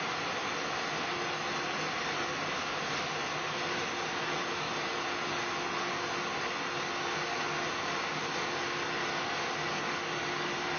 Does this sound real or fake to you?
real